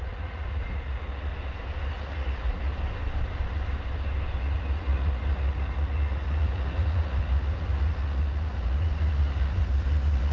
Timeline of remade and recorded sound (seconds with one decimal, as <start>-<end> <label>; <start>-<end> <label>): 0.0-1.3 remade; 1.3-1.9 recorded; 1.9-2.7 remade; 2.7-4.4 recorded; 4.4-10.3 remade